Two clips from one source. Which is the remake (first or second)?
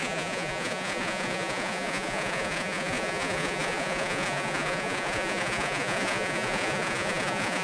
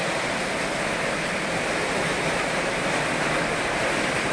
first